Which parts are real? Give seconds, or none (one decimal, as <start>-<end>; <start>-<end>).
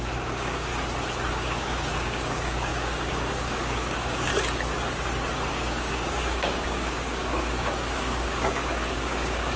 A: 0.7-1.3; 4.3-5.5